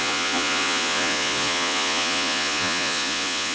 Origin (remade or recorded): remade